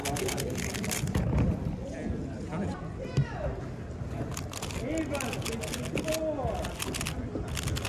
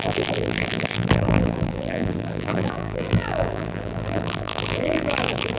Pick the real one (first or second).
first